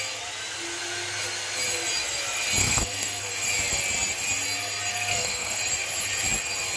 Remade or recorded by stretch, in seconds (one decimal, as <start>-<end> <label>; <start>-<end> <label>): 0.0-2.6 recorded; 2.6-3.3 remade; 3.3-4.9 recorded; 4.9-5.6 remade; 5.6-6.8 recorded